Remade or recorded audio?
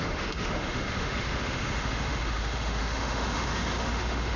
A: remade